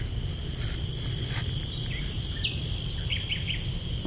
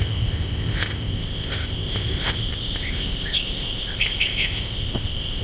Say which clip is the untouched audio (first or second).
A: first